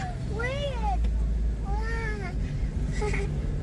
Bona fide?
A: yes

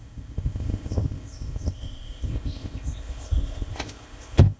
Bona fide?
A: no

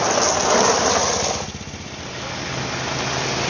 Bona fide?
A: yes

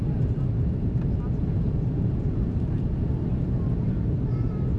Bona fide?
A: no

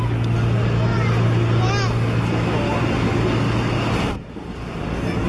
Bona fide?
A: yes